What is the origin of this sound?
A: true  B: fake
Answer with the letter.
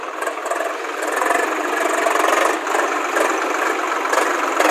A